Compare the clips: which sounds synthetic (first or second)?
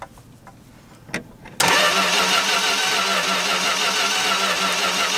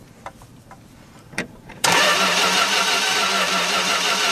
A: second